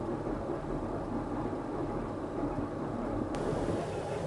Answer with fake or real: real